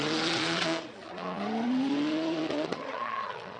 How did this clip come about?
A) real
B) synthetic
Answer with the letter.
B